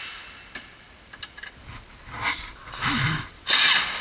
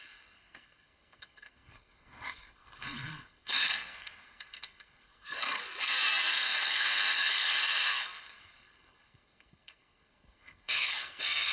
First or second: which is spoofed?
second